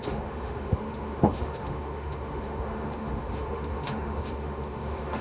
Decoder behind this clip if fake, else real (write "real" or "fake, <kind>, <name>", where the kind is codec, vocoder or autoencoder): fake, autoencoder, DAC-VAE